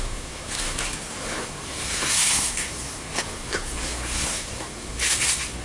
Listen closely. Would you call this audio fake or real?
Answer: fake